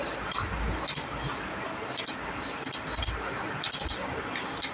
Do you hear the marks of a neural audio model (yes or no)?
no